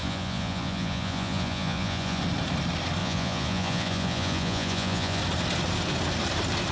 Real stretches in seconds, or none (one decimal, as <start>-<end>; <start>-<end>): 2.2-3.0; 5.2-6.7